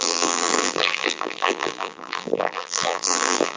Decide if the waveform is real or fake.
fake